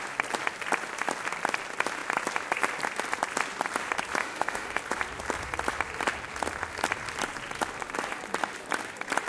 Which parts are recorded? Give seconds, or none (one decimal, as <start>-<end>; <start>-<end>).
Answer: 0.0-4.2; 4.8-9.3